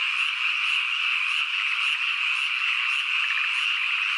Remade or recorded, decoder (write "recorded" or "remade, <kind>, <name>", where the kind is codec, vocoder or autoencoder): recorded